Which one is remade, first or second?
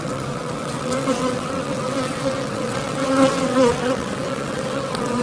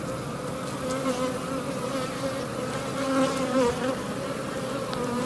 first